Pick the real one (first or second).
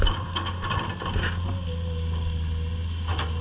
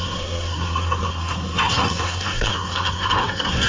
first